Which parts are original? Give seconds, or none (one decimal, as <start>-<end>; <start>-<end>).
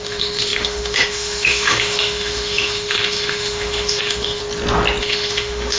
4.4-5.0